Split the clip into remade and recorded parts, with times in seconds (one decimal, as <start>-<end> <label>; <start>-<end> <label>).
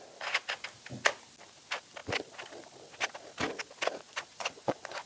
0.0-4.3 recorded; 4.3-5.1 remade